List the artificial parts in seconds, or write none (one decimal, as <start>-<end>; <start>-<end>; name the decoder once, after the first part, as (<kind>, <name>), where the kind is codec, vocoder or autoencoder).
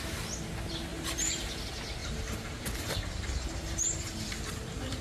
0.9-1.5 (vocoder, BigVGAN v2); 2.0-5.0